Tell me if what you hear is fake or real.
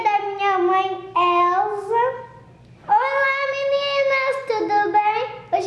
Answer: real